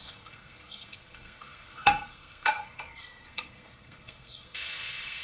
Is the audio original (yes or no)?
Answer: no